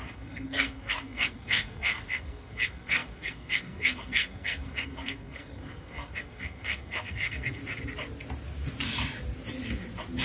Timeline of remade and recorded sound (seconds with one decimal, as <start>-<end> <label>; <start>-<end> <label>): 0.0-7.6 remade; 7.6-10.2 recorded

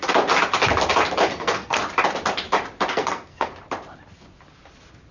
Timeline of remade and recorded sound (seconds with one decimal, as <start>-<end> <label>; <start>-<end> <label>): 0.0-1.3 recorded; 1.3-1.8 remade; 1.8-2.9 recorded; 2.9-3.5 remade; 3.5-5.1 recorded

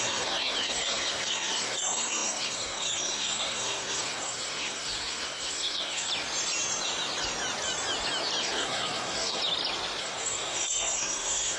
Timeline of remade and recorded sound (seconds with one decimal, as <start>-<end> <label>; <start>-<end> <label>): 0.0-6.1 remade; 6.1-8.4 recorded; 8.4-9.4 remade; 9.4-10.0 recorded; 10.0-11.6 remade

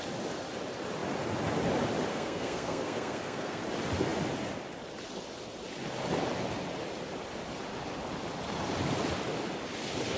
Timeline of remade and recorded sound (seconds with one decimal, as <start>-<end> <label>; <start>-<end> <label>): 0.0-2.1 recorded; 2.1-3.6 remade; 3.6-10.2 recorded